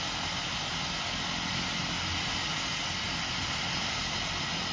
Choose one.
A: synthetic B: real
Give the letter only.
B